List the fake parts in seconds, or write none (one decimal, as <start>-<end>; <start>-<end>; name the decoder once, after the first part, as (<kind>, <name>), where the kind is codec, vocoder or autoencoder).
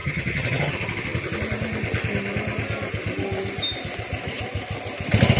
0.0-0.7 (vocoder, HiFi-GAN)